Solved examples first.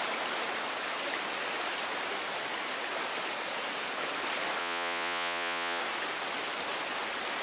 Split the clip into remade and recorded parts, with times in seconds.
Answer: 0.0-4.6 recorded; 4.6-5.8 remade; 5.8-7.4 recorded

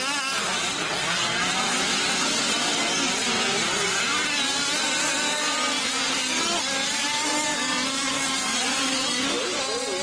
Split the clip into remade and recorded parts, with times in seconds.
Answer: 0.0-10.0 recorded

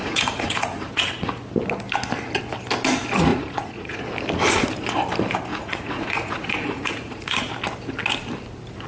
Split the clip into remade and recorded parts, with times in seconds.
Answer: 0.0-1.1 remade; 1.1-3.3 recorded; 3.3-4.0 remade; 4.0-5.5 recorded; 5.5-7.5 remade; 7.5-8.9 recorded

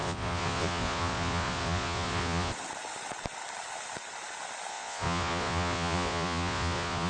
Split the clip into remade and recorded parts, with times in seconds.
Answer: 0.0-2.5 remade; 2.5-4.7 recorded; 4.7-7.1 remade

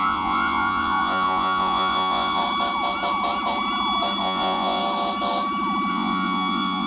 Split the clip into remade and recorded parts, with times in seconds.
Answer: 0.0-2.4 remade; 2.4-4.2 recorded; 4.2-4.8 remade; 4.8-5.9 recorded; 5.9-6.9 remade

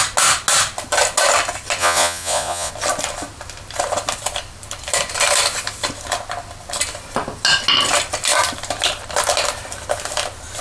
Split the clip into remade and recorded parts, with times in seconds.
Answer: 0.0-1.8 recorded; 1.8-2.7 remade; 2.7-10.6 recorded

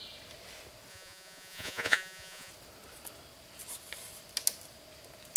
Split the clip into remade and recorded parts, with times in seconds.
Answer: 0.0-0.9 recorded; 0.9-2.5 remade; 2.5-5.4 recorded